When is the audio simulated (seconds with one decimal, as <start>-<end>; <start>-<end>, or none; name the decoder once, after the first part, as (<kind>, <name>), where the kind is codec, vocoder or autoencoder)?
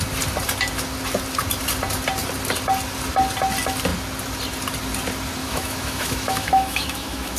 5.4-7.4 (autoencoder, DAC-VAE)